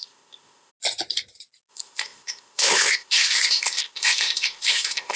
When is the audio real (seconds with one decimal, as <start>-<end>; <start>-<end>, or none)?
0.7-1.7